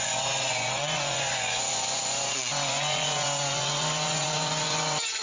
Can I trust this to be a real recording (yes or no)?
no